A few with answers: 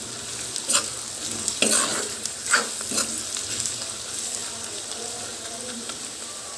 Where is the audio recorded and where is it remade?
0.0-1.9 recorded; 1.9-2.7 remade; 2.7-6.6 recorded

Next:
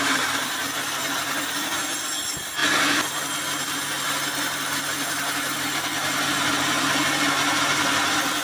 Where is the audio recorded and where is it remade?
0.0-8.4 recorded

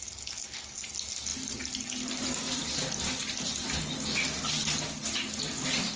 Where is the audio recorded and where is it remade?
0.0-1.3 recorded; 1.3-2.7 remade; 2.7-6.0 recorded

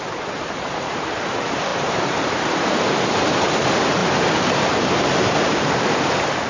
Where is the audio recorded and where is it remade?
0.0-6.5 remade

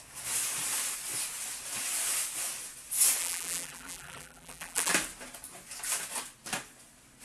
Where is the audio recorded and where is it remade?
0.0-3.2 recorded; 3.2-4.9 remade; 4.9-7.2 recorded

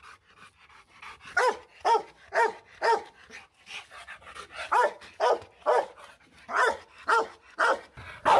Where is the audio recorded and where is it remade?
0.0-8.4 recorded

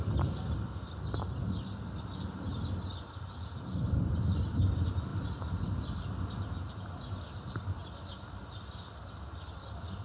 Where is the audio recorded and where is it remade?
0.0-2.9 recorded; 2.9-4.1 remade; 4.1-5.1 recorded; 5.1-6.5 remade; 6.5-10.0 recorded